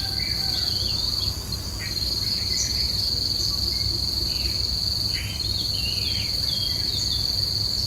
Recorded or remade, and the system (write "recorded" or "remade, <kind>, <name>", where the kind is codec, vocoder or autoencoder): recorded